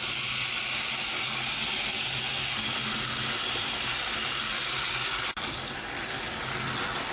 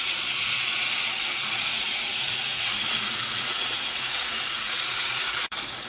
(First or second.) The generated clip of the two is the second